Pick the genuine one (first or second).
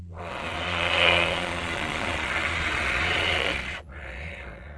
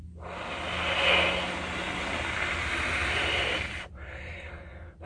second